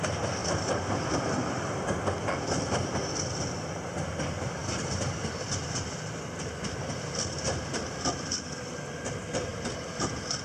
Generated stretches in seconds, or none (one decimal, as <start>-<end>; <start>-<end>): 0.4-1.9; 4.6-8.4